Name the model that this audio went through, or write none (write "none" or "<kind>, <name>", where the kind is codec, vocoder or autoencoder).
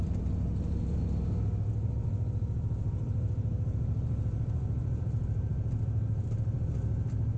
vocoder, BigVGAN v2